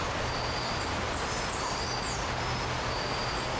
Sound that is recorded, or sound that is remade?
recorded